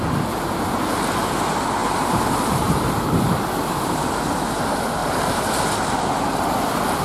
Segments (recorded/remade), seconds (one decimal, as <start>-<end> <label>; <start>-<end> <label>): 0.0-1.8 recorded; 1.8-3.1 remade; 3.1-5.0 recorded; 5.0-5.5 remade; 5.5-7.0 recorded